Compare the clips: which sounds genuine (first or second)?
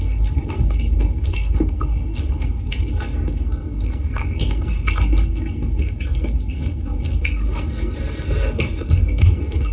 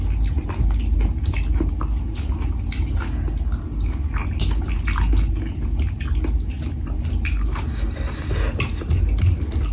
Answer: second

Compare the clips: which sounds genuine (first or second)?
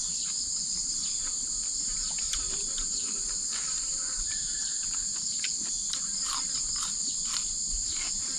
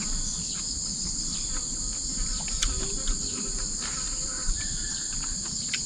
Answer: second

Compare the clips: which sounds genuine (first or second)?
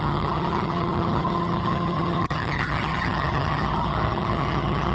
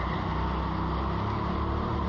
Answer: second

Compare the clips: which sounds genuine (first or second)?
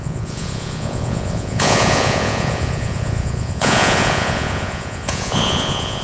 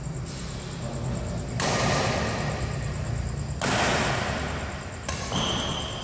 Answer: second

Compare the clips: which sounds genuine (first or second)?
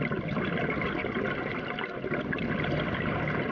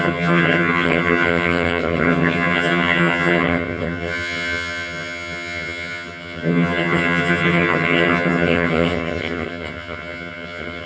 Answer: first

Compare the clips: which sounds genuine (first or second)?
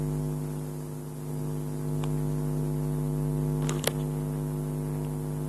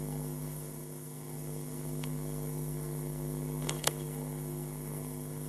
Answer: first